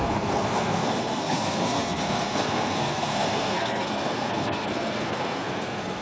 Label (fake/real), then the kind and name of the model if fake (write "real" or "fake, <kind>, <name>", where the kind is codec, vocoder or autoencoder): fake, codec, SNAC